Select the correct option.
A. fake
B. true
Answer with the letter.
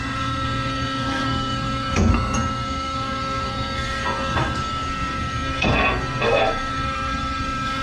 A